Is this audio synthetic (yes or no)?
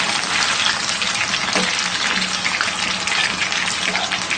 no